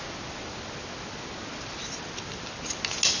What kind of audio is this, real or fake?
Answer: real